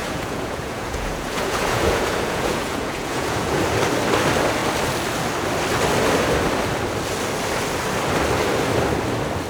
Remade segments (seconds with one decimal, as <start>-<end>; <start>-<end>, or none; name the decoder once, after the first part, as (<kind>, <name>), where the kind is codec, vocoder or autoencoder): 0.0-3.6 (vocoder, Vocos)